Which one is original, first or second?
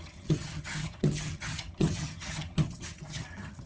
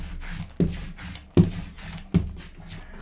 second